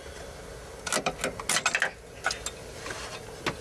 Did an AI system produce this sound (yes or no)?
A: no